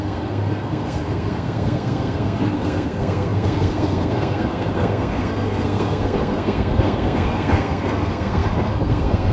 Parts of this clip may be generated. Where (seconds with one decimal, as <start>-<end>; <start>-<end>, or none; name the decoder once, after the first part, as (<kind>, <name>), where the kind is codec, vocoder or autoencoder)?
0.0-9.3 (codec, SNAC)